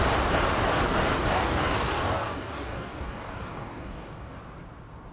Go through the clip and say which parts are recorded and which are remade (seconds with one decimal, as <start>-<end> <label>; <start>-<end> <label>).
0.0-1.3 recorded; 1.3-4.4 remade; 4.4-5.1 recorded

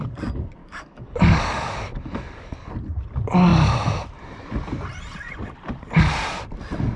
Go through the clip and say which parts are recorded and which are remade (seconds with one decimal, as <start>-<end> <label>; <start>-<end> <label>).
0.0-0.6 recorded; 0.6-2.7 remade; 2.7-7.0 recorded

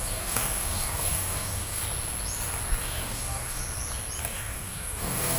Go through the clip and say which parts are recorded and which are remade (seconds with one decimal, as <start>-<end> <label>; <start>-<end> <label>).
0.0-1.8 remade; 1.8-2.8 recorded; 2.8-3.6 remade; 3.6-4.2 recorded; 4.2-5.4 remade

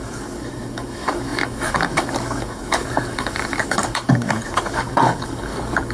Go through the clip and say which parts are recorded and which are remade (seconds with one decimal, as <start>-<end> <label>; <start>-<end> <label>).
0.0-5.9 remade

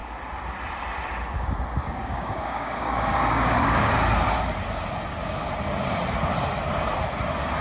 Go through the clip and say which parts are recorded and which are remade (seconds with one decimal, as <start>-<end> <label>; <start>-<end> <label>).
0.0-1.8 recorded; 1.8-3.9 remade; 3.9-7.6 recorded

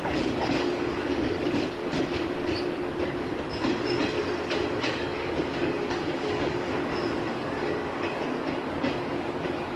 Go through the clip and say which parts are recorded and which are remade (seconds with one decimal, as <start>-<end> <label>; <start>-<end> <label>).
0.0-1.8 remade; 1.8-4.8 recorded; 4.8-6.7 remade; 6.7-7.3 recorded; 7.3-9.8 remade

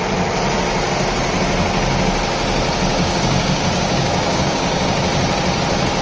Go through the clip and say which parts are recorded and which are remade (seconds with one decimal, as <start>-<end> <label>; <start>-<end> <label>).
0.0-2.9 recorded; 2.9-5.0 remade; 5.0-6.0 recorded